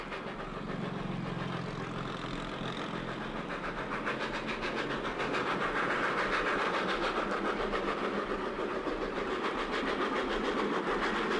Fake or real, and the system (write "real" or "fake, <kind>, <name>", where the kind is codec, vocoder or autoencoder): real